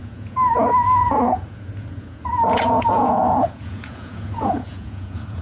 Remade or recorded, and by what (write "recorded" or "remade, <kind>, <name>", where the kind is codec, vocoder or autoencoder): remade, vocoder, Vocos